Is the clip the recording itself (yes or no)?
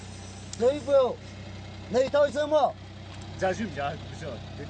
yes